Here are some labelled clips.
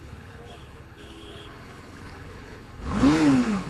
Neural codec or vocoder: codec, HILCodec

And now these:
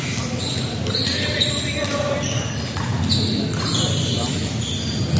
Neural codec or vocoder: none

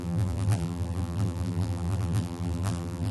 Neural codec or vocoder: vocoder, BigVGAN v2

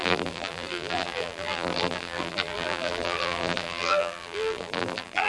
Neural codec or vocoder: vocoder, BigVGAN v2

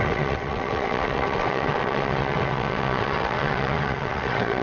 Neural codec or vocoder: vocoder, WaveNeXt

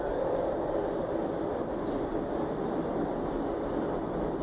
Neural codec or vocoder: none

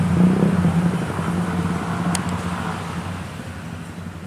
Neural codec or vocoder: none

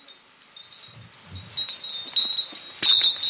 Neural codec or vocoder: none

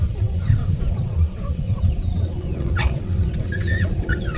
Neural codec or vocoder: vocoder, WaveNeXt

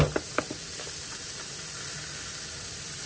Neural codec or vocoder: none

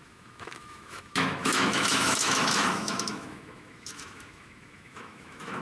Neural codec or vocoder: autoencoder, DAC-VAE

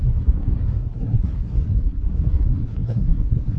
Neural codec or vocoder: codec, SNAC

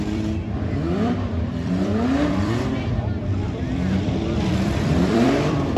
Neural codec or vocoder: vocoder, BigVGAN v2